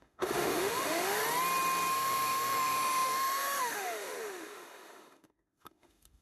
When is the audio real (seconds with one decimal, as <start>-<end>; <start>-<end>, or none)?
1.2-1.9